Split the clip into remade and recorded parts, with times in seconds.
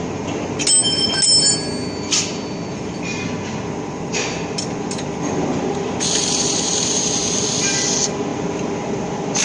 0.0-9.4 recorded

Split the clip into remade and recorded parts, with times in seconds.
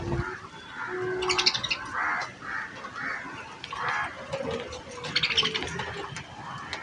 0.0-6.8 recorded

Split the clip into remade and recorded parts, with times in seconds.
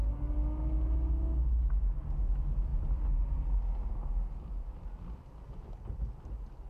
0.0-6.7 recorded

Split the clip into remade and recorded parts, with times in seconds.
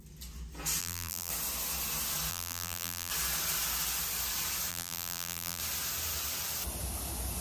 0.0-0.8 recorded; 0.8-1.3 remade; 1.3-2.3 recorded; 2.3-3.1 remade; 3.1-4.7 recorded; 4.7-5.6 remade; 5.6-7.4 recorded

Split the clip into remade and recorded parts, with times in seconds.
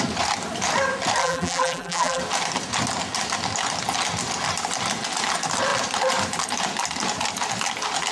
0.0-1.2 recorded; 1.2-2.2 remade; 2.2-8.1 recorded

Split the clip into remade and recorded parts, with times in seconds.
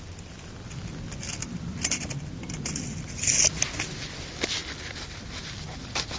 0.0-6.2 recorded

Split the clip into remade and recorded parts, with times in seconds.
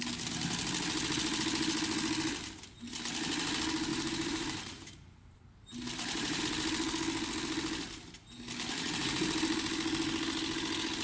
0.0-3.9 recorded; 3.9-6.4 remade; 6.4-11.0 recorded